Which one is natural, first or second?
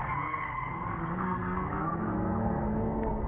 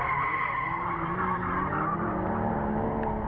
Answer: second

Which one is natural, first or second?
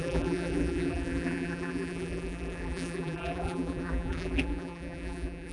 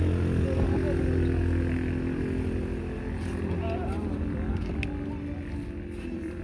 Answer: second